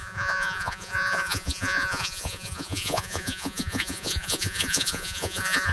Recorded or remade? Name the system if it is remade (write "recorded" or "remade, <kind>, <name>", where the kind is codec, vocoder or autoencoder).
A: remade, vocoder, Vocos